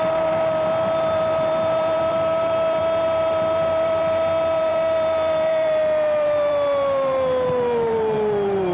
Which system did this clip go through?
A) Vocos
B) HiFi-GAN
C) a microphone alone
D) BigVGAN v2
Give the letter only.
D